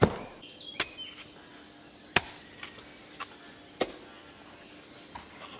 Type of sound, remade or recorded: recorded